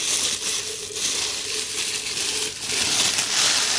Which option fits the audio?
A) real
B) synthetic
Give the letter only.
A